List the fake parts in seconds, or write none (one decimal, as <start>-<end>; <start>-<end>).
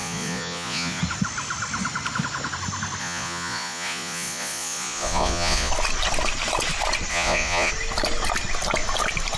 0.0-1.0; 3.0-5.7; 7.1-7.7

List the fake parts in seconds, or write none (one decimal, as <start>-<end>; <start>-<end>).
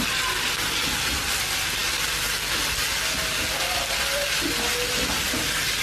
none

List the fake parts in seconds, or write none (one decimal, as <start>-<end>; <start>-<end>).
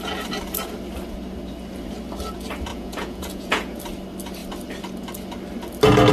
2.7-3.8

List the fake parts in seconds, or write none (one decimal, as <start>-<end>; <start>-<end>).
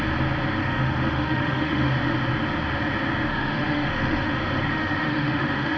0.6-1.9; 3.3-5.8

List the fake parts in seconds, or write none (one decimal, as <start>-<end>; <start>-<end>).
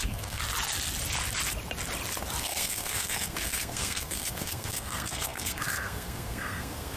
0.0-0.4; 2.4-7.0